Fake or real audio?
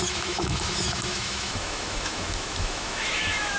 fake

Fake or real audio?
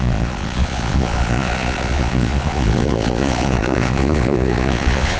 fake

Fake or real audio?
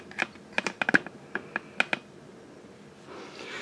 real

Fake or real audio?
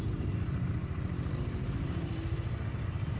fake